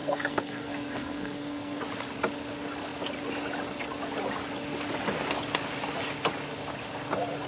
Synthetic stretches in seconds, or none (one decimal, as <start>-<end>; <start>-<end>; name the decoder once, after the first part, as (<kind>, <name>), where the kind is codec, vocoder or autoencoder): 0.0-1.8 (codec, SNAC)

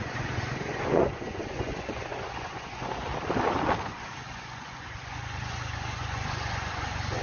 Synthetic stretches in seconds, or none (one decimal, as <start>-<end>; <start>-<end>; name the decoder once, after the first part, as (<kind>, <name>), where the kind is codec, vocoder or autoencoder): 0.0-3.1 (vocoder, Vocos); 3.8-7.2

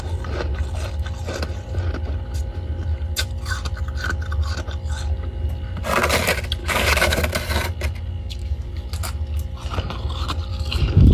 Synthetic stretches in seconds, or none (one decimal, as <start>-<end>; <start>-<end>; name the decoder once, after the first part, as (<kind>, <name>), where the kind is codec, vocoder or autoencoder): 6.6-7.3 (codec, DAC); 8.2-8.7; 10.5-11.1